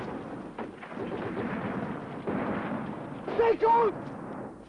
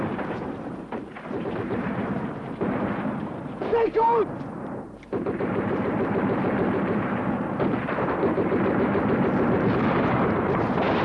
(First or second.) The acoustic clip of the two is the first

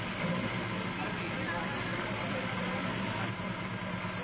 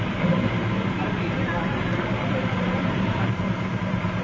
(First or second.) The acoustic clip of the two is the first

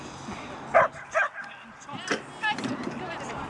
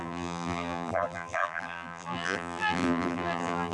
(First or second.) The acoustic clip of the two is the first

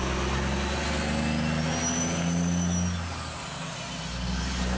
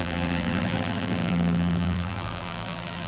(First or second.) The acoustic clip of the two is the first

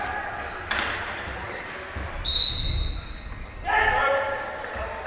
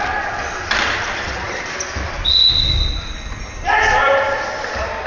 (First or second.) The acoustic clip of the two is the first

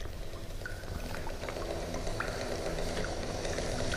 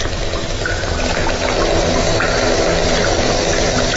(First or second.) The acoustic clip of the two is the second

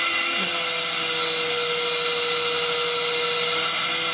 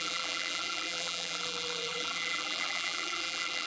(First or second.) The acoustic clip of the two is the first